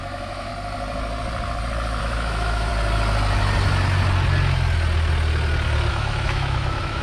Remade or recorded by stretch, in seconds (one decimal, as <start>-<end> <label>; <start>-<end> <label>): 0.0-0.5 remade; 0.5-2.0 recorded; 2.0-2.7 remade; 2.7-5.9 recorded; 5.9-7.0 remade

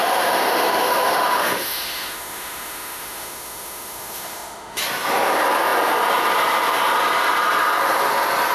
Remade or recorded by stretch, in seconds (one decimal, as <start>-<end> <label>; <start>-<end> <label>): 0.0-4.8 remade; 4.8-8.5 recorded

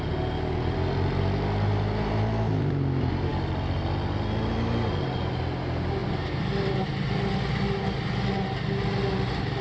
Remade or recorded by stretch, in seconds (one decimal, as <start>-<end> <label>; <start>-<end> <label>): 0.0-9.6 recorded

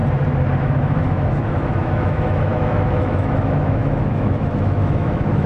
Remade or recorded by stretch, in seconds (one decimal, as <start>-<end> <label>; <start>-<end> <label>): 0.0-0.6 recorded; 0.6-5.5 remade

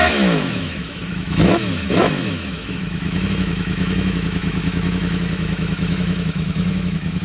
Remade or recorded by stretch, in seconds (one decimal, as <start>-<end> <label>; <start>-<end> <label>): 0.0-7.2 remade

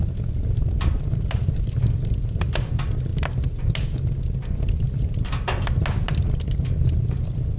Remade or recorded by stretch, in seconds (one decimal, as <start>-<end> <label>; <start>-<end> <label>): 0.0-7.6 recorded

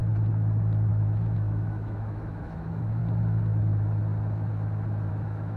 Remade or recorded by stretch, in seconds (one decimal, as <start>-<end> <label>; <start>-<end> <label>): 0.0-0.9 recorded; 0.9-3.0 remade; 3.0-5.1 recorded; 5.1-5.6 remade